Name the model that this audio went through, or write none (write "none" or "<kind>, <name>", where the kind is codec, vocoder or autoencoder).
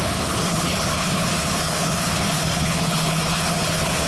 codec, HILCodec